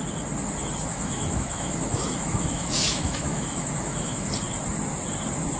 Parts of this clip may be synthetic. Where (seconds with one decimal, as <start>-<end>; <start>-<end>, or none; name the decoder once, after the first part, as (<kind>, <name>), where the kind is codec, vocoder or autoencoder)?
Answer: 0.9-4.3 (autoencoder, DAC-VAE)